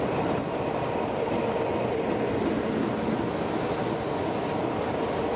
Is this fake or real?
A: real